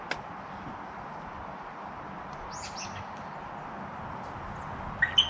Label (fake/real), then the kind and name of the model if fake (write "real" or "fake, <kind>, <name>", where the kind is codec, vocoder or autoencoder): real